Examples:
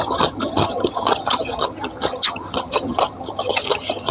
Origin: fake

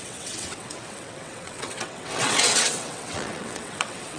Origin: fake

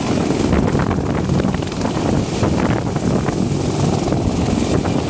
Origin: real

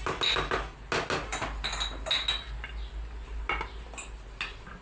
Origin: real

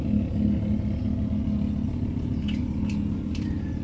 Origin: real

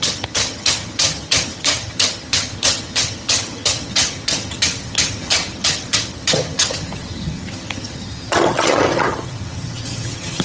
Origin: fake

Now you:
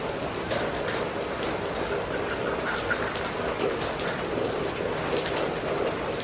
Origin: real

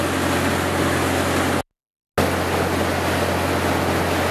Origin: real